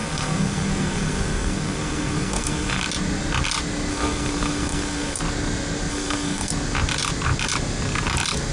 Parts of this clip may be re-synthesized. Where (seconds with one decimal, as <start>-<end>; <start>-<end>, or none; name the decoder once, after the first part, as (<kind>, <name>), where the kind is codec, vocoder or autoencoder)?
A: 0.0-2.8 (codec, SNAC); 3.9-5.2; 5.9-6.5